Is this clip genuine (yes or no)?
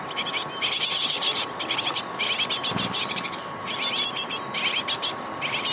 yes